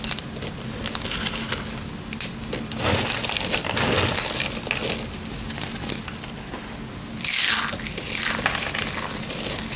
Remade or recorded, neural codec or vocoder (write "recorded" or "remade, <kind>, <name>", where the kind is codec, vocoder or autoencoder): recorded